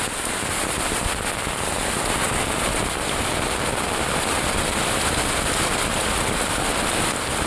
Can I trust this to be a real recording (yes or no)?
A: yes